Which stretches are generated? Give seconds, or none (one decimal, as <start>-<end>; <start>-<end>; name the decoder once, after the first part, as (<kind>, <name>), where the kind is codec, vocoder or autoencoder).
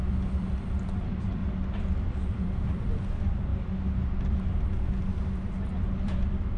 0.0-1.4 (vocoder, BigVGAN v2); 2.0-3.5; 5.8-6.6